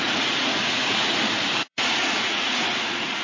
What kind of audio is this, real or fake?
fake